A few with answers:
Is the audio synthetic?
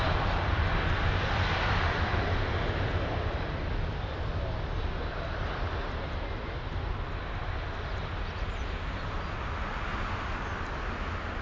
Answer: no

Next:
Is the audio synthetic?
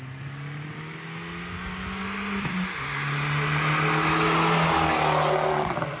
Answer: no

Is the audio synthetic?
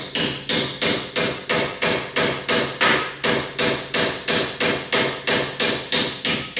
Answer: no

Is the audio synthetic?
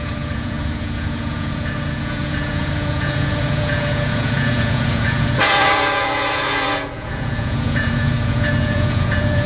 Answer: yes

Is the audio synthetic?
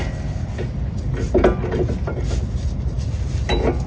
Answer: no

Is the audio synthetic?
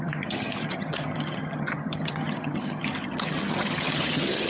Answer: yes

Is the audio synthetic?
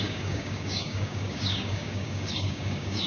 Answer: yes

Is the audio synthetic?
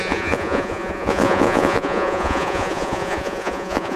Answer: yes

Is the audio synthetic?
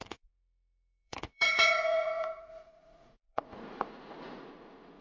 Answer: yes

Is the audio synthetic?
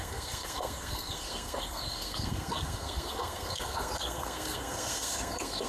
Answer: yes